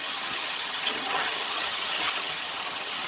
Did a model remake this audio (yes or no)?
yes